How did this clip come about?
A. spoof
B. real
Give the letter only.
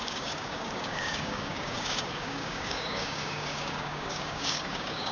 A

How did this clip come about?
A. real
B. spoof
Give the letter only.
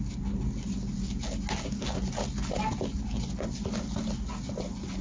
A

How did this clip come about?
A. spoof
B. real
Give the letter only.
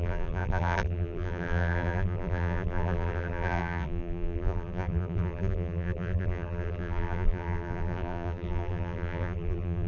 A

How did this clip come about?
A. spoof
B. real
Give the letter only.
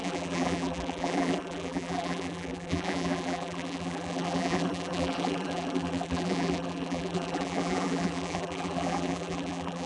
A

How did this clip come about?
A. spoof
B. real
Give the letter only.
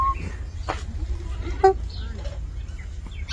B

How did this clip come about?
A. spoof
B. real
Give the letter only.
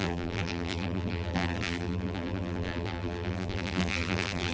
A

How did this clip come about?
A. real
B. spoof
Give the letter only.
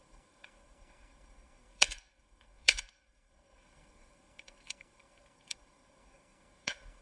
B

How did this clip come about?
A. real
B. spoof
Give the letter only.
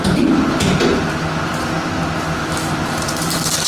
A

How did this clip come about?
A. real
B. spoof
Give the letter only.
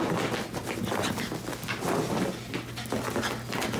A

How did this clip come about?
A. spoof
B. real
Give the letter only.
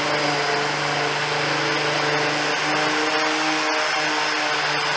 B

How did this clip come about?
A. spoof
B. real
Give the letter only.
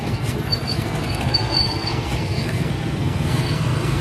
A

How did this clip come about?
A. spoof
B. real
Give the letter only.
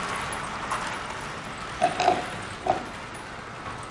B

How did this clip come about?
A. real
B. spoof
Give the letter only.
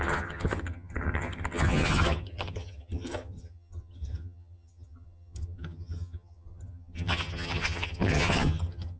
B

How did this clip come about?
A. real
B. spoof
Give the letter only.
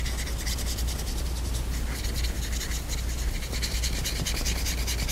A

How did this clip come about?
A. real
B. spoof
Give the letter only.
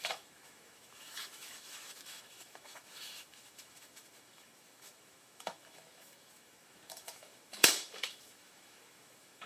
B